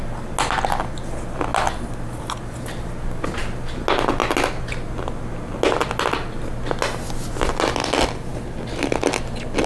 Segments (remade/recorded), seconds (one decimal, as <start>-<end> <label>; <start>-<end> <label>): 0.0-9.7 recorded